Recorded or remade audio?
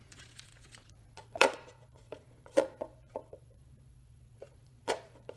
remade